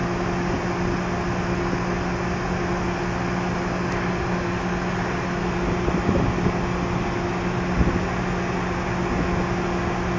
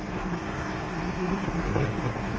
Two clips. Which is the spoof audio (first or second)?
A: second